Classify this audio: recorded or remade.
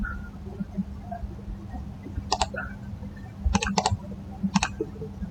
recorded